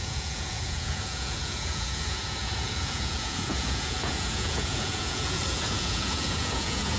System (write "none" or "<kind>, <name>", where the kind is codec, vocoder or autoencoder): vocoder, Vocos